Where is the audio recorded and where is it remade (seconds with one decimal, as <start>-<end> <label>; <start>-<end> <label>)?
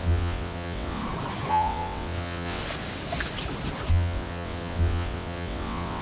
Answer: 0.0-1.0 remade; 1.0-1.5 recorded; 1.5-2.6 remade; 2.6-3.9 recorded; 3.9-6.0 remade